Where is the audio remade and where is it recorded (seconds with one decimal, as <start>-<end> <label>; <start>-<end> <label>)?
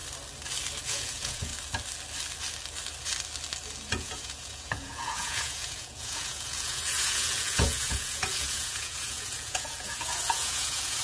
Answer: 0.0-0.8 recorded; 0.8-1.5 remade; 1.5-3.9 recorded; 3.9-11.0 remade